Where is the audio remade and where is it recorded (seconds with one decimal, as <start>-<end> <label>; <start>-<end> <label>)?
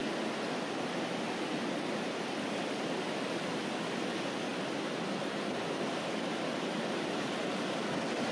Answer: 0.0-8.3 recorded